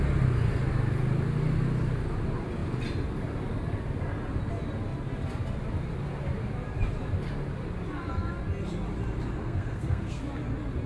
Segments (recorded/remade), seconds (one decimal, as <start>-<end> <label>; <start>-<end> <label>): 0.0-9.4 recorded; 9.4-10.2 remade; 10.2-10.9 recorded